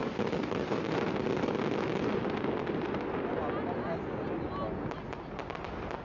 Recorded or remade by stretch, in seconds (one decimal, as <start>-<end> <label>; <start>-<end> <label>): 0.0-1.3 remade; 1.3-6.0 recorded

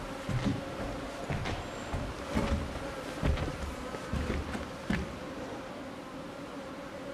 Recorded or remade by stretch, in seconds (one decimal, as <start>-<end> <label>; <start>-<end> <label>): 0.0-1.4 recorded; 1.4-5.6 remade; 5.6-7.1 recorded

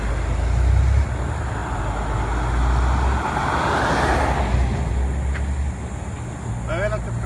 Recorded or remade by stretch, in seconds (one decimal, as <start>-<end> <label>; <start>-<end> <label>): 0.0-7.3 recorded

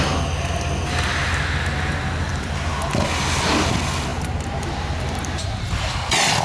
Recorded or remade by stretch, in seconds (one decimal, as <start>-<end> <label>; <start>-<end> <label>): 0.0-4.1 recorded; 4.1-5.9 remade; 5.9-6.4 recorded

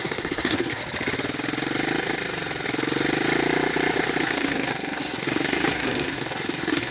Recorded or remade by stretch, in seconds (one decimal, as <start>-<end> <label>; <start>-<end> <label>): 0.0-0.8 remade; 0.8-4.2 recorded; 4.2-6.9 remade